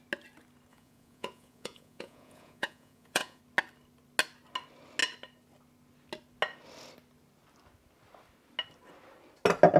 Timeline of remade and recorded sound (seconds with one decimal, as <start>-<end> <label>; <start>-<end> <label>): 0.0-0.7 recorded; 0.7-3.4 remade; 3.4-9.8 recorded